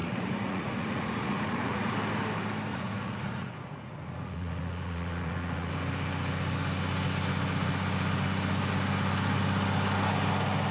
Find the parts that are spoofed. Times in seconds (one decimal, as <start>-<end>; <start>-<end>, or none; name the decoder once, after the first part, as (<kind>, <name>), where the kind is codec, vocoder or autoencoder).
0.0-1.9 (vocoder, Vocos); 2.7-5.7